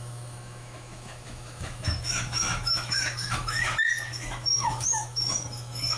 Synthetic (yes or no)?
yes